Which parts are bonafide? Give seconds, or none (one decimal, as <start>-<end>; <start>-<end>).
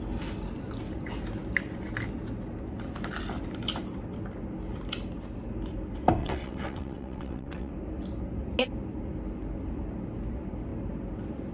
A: 0.0-6.2; 7.7-11.5